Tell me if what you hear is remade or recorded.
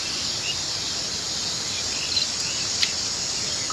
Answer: recorded